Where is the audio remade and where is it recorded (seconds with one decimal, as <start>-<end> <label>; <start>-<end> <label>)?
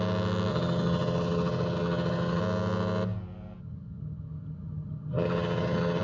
0.0-0.5 recorded; 0.5-2.4 remade; 2.4-3.6 recorded; 3.6-6.0 remade